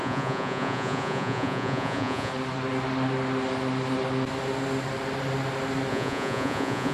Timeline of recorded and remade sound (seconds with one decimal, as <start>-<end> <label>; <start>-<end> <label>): 0.0-2.3 remade; 2.3-5.9 recorded; 5.9-6.9 remade

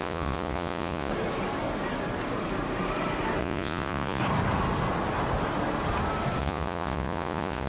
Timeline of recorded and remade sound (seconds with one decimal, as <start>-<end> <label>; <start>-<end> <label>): 0.0-1.1 remade; 1.1-3.4 recorded; 3.4-4.2 remade; 4.2-6.4 recorded; 6.4-7.7 remade

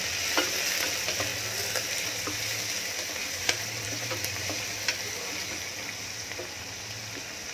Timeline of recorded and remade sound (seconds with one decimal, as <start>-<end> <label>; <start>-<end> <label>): 0.0-3.2 recorded; 3.2-4.6 remade; 4.6-7.5 recorded

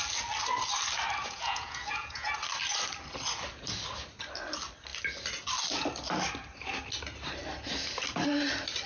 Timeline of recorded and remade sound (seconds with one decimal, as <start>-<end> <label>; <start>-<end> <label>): 0.0-1.2 recorded; 1.2-2.3 remade; 2.3-8.9 recorded